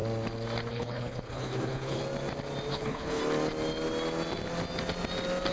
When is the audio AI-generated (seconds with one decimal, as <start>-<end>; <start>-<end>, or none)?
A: 0.7-2.0; 2.7-3.2